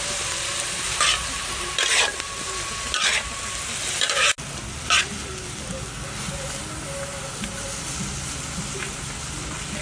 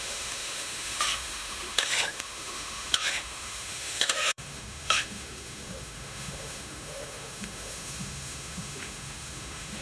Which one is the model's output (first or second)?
second